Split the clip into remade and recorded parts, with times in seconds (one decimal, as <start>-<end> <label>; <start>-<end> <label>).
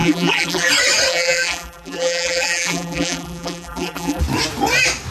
0.0-0.7 remade; 0.7-1.1 recorded; 1.1-4.2 remade; 4.2-5.1 recorded